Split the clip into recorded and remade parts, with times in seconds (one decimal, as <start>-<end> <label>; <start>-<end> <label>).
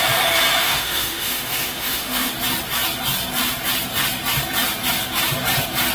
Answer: 0.0-0.6 recorded; 0.6-2.3 remade; 2.3-5.9 recorded